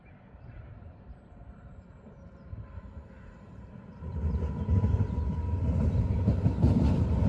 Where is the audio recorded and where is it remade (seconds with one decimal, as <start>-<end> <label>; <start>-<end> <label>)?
0.0-4.1 remade; 4.1-4.9 recorded; 4.9-7.3 remade